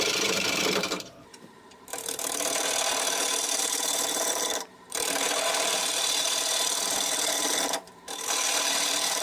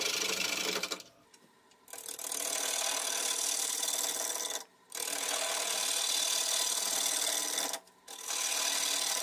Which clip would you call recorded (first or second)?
second